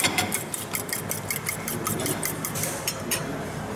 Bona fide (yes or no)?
yes